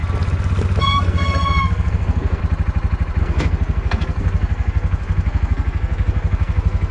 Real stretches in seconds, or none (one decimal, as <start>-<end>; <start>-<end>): 0.0-0.8; 2.4-3.2